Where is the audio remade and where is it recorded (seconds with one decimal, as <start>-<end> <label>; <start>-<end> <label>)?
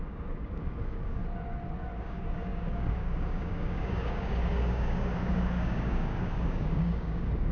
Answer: 0.0-1.2 remade; 1.2-2.0 recorded; 2.0-7.5 remade